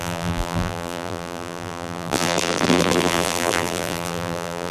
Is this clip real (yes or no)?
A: no